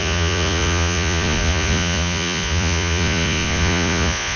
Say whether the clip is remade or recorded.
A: remade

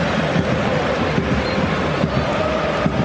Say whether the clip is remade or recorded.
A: recorded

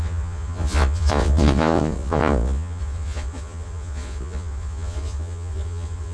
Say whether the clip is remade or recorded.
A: remade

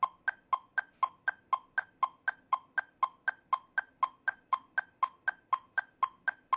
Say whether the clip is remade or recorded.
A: recorded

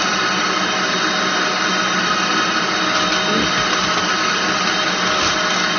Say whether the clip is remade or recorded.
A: recorded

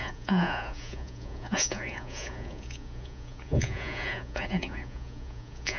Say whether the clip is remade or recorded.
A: remade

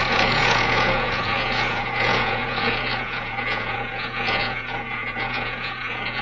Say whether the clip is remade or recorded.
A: remade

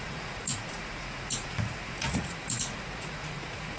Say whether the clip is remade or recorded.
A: remade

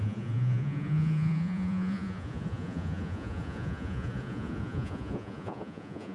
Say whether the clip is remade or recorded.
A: remade